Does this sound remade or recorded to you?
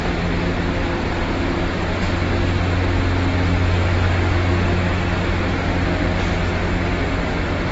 recorded